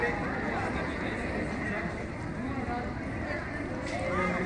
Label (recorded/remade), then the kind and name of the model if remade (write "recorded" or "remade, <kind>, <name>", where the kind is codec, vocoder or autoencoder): recorded